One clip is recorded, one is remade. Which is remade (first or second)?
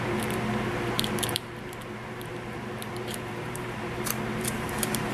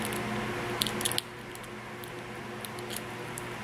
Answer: first